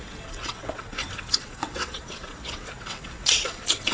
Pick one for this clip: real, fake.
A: fake